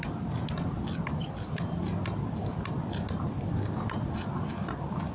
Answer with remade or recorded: recorded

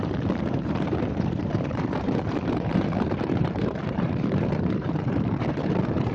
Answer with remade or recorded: remade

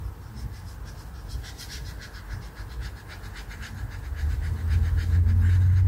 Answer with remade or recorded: recorded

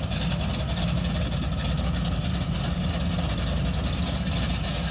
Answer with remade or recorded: recorded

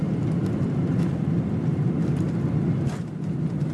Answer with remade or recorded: recorded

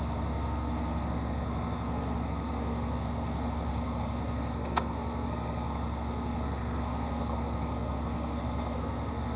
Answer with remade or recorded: remade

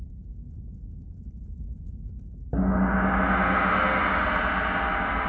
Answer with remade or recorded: recorded